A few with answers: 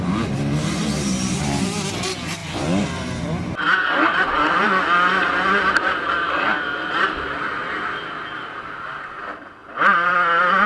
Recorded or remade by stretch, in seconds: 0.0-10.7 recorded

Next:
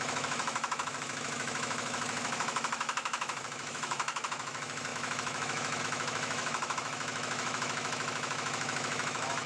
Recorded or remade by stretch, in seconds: 0.0-9.5 remade

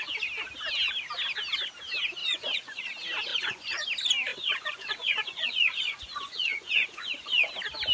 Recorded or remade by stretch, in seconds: 0.0-2.2 recorded; 2.2-2.8 remade; 2.8-3.3 recorded; 3.3-3.9 remade; 3.9-4.3 recorded; 4.3-7.5 remade; 7.5-7.9 recorded

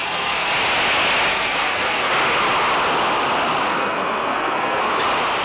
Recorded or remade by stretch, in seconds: 0.0-0.5 remade; 0.5-1.3 recorded; 1.3-2.1 remade; 2.1-3.7 recorded; 3.7-5.0 remade; 5.0-5.4 recorded